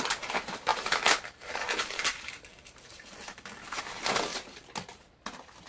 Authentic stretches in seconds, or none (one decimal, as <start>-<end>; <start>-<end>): 0.0-0.7; 3.8-4.3; 5.1-5.7